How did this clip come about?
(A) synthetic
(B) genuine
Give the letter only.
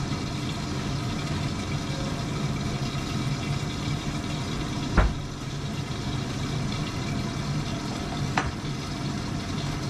B